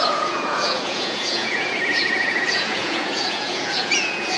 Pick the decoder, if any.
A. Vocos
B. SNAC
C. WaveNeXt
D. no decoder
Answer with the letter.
A